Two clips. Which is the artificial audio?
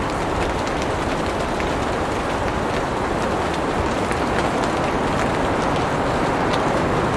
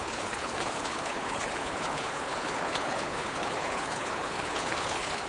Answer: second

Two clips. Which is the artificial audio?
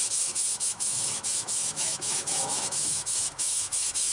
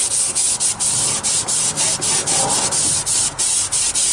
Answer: first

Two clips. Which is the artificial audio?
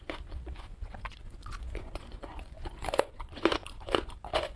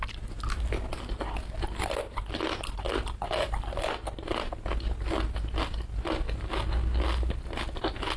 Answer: first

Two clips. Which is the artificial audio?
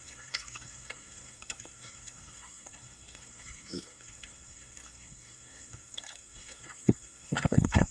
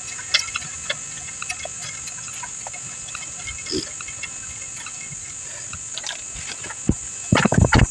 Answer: first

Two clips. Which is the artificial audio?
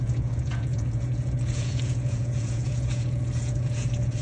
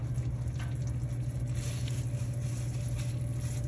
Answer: first